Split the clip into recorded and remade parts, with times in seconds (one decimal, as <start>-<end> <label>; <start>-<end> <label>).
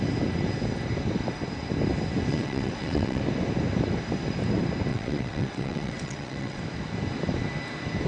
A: 0.0-2.3 recorded; 2.3-3.2 remade; 3.2-4.9 recorded; 4.9-6.6 remade; 6.6-8.1 recorded